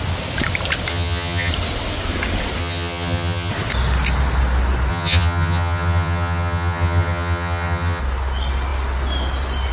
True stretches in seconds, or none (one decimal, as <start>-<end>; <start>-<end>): 0.0-0.9; 1.5-2.6; 3.5-4.9; 8.0-9.7